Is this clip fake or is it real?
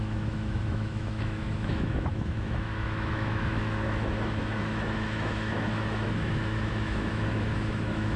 fake